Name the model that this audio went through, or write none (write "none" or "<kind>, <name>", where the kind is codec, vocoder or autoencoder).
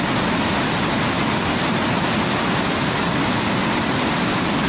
none